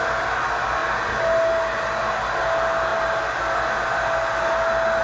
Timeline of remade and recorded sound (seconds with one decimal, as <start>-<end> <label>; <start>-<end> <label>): 0.0-5.0 recorded